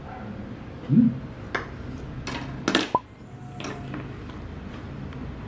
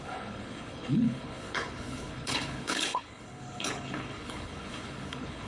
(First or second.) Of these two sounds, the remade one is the second